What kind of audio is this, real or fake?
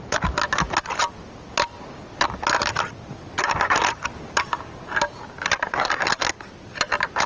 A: real